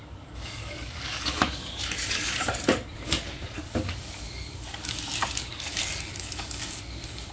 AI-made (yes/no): yes